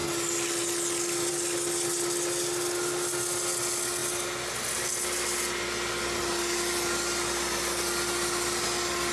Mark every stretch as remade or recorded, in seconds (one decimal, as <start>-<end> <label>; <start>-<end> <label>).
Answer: 0.0-9.1 recorded